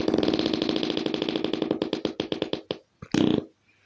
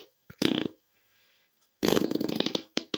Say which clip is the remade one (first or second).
second